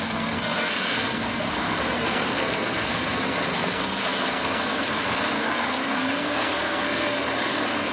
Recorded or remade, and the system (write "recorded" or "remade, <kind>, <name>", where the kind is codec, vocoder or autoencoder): remade, codec, SNAC